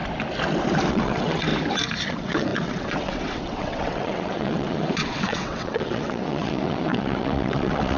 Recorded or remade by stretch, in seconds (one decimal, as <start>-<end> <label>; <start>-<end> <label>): 0.0-0.9 recorded; 0.9-1.5 remade; 1.5-2.1 recorded; 2.1-8.0 remade